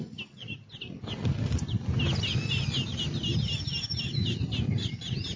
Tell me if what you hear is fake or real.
real